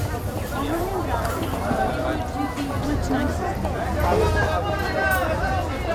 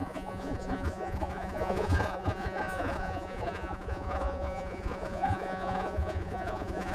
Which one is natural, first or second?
first